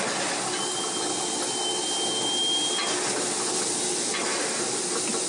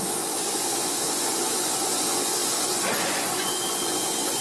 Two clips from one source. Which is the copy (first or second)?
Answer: second